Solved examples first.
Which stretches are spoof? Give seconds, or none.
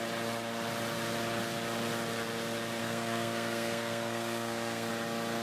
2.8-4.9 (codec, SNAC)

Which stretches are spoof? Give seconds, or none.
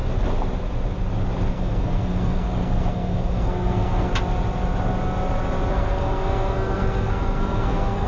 1.5-4.1 (codec, SNAC); 5.7-8.1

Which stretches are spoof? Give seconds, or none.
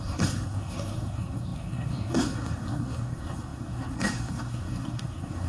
0.0-5.5 (codec, SNAC)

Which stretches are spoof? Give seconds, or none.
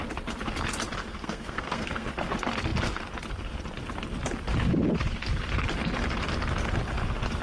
1.2-2.1 (codec, SNAC)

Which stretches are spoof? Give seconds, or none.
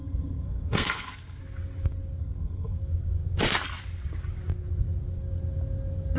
0.0-1.4 (codec, SNAC); 2.2-2.8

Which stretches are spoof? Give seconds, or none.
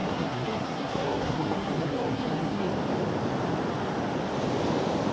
0.0-2.7 (codec, SNAC)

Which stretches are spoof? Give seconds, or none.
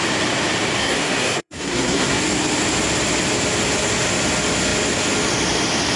0.8-2.2 (codec, SNAC)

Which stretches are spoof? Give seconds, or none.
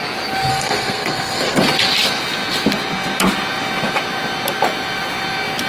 0.5-1.6 (codec, SNAC)